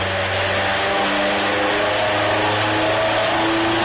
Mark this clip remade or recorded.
recorded